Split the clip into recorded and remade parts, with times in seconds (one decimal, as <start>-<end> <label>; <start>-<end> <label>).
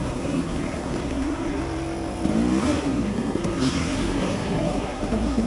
0.0-1.6 remade; 1.6-2.6 recorded; 2.6-5.5 remade